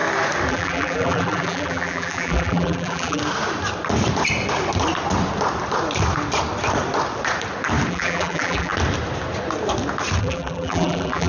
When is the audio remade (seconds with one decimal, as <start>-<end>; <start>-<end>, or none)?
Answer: 0.5-3.2; 7.9-8.7; 10.2-11.3